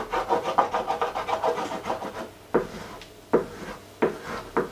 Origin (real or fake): real